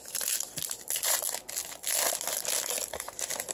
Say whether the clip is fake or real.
real